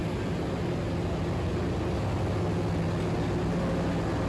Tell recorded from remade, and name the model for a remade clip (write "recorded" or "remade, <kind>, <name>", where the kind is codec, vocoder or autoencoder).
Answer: recorded